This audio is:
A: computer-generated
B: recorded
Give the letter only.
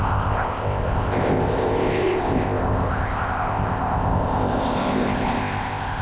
A